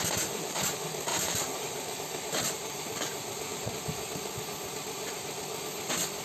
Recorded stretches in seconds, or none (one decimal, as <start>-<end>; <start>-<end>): 0.7-1.1; 3.7-6.2

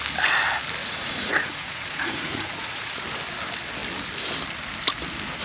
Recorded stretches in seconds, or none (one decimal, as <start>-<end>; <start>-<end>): 0.0-0.8; 3.0-5.4

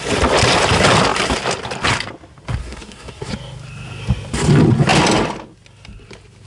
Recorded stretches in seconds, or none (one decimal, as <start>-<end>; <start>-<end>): 0.0-2.6; 3.3-6.5

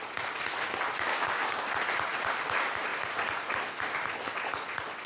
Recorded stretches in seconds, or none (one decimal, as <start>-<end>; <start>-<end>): 0.0-1.1; 1.7-5.1

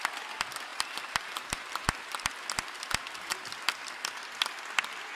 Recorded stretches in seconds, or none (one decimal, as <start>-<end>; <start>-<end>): 0.0-0.7; 2.4-5.1